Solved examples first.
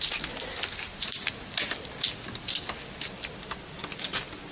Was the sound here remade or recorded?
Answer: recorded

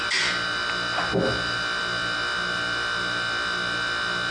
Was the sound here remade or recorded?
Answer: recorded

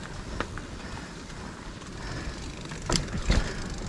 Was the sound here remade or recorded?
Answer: recorded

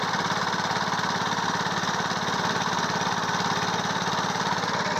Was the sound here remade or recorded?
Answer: recorded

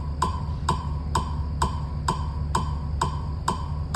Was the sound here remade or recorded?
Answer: recorded